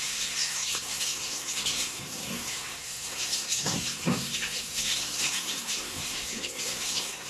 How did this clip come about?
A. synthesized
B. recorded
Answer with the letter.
A